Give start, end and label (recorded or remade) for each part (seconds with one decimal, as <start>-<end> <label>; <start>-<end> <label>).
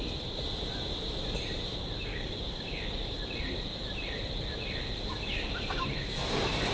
0.0-2.1 recorded; 2.1-3.2 remade; 3.2-6.7 recorded